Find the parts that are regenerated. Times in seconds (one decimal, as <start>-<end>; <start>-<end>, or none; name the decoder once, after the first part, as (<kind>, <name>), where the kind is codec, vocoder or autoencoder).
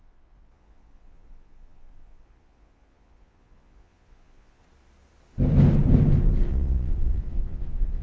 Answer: 0.0-4.6 (vocoder, Vocos); 6.5-8.0